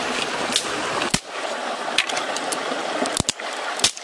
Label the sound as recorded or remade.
recorded